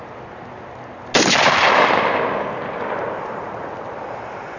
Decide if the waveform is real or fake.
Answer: real